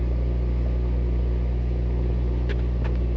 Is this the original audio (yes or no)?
yes